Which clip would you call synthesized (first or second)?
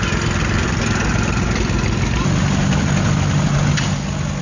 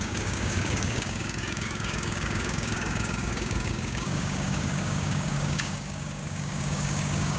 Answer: second